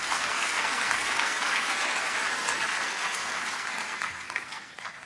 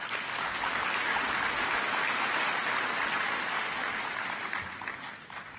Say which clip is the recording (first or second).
second